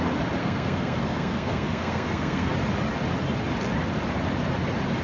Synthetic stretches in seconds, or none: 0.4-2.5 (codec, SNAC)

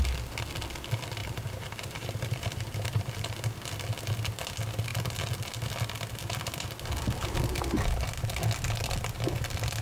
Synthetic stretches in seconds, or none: 1.2-3.3 (vocoder, BigVGAN v2)

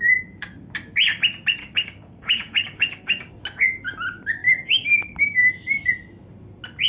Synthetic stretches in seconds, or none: 1.6-3.3 (codec, DAC); 4.4-5.9

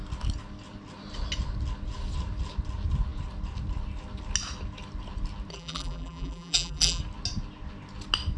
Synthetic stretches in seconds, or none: 5.5-7.0 (vocoder, BigVGAN v2)

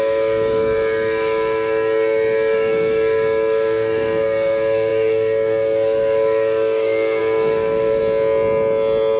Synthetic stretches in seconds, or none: 0.0-8.0 (codec, DAC)

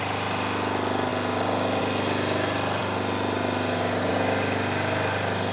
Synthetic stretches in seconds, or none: none

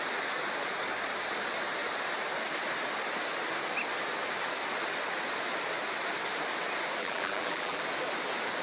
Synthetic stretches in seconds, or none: 7.0-7.8 (vocoder, BigVGAN v2)

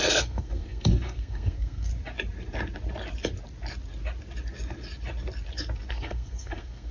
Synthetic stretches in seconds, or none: 0.0-1.9 (codec, SNAC); 5.9-6.9